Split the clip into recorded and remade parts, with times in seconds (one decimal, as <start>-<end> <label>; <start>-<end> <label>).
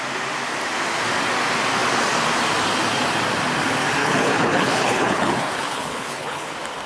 0.0-4.0 recorded; 4.0-6.5 remade; 6.5-6.9 recorded